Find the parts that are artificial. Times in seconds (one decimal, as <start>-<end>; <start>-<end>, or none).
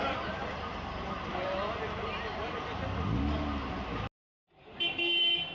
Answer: 0.0-1.3; 4.6-5.5